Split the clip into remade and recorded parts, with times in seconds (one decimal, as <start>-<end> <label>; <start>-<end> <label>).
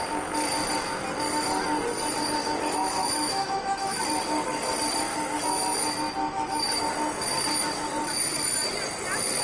0.0-2.4 recorded; 2.4-4.0 remade; 4.0-5.1 recorded; 5.1-5.6 remade; 5.6-6.2 recorded; 6.2-6.8 remade; 6.8-9.4 recorded